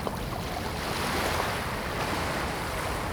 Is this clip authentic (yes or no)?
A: yes